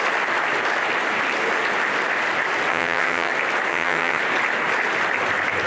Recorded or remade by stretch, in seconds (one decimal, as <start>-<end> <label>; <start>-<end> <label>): 0.0-2.7 recorded; 2.7-3.3 remade; 3.3-3.7 recorded; 3.7-4.2 remade; 4.2-5.7 recorded